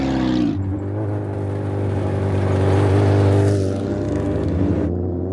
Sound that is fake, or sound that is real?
real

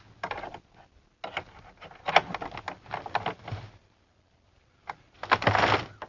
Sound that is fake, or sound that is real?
real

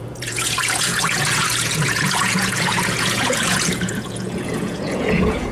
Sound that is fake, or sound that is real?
fake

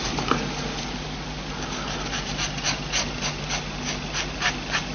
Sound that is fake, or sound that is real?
real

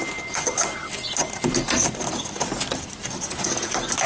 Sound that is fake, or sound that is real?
real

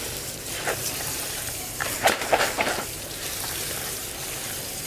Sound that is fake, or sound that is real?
fake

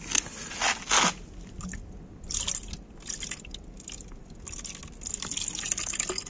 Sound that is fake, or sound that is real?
real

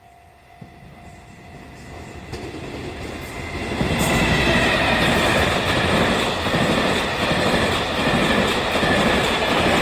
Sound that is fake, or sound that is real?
real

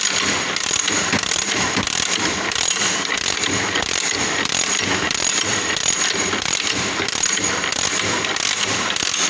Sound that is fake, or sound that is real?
fake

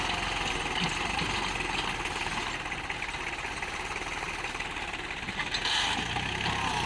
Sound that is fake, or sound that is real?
real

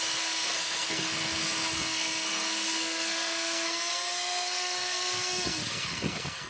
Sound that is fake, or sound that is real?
fake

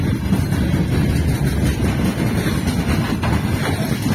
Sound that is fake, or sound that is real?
real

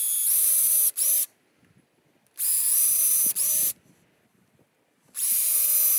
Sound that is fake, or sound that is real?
real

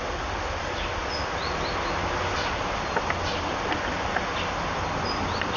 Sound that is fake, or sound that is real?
real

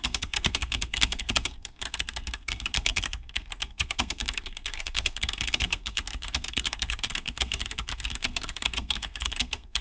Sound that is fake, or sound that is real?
fake